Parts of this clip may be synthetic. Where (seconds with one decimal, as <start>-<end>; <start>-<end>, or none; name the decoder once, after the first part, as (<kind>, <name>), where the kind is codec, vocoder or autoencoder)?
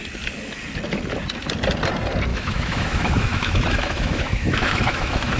2.3-5.4 (autoencoder, DAC-VAE)